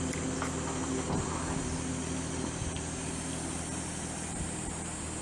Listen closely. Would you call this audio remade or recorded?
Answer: recorded